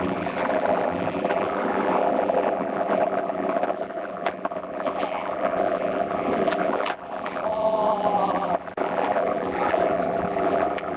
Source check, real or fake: fake